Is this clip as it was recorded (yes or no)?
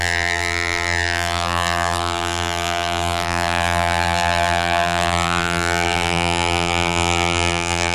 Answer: no